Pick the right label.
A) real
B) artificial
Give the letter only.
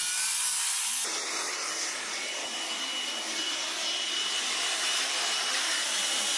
A